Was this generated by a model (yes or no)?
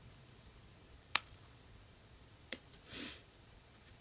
yes